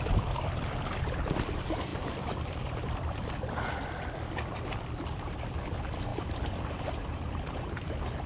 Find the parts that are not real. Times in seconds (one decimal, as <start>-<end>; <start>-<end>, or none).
0.0-6.1; 7.5-8.3